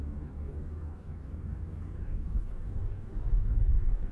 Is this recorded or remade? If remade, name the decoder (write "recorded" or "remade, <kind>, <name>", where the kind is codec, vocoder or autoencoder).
remade, codec, DAC